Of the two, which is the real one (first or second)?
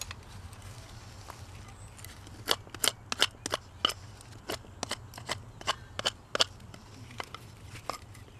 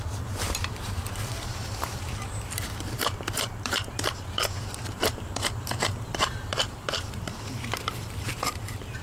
first